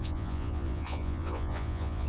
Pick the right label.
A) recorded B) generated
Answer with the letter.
B